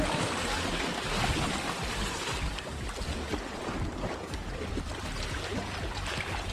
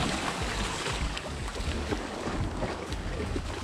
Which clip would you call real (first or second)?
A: first